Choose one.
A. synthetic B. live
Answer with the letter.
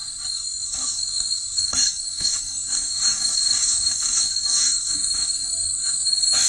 A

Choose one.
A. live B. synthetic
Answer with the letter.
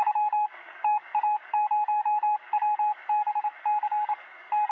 B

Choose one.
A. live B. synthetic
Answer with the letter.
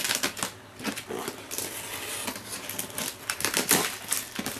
A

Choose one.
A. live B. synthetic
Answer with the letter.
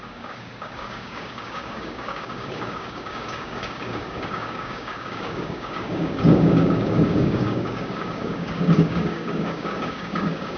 B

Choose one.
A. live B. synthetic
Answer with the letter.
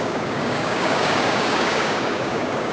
B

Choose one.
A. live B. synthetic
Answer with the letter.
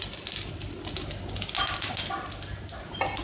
A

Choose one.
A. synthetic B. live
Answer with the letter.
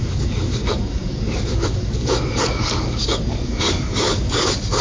A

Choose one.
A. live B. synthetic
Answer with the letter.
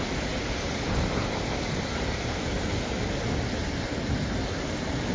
A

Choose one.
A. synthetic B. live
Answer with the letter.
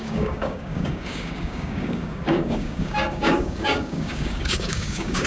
A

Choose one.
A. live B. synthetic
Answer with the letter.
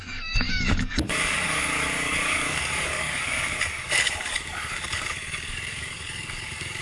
B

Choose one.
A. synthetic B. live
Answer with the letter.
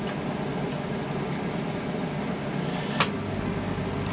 B